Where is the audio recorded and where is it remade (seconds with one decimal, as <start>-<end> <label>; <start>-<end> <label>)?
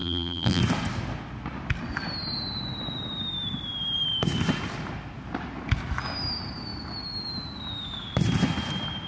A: 0.0-0.6 remade; 0.6-9.1 recorded